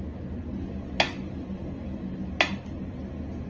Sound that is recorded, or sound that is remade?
recorded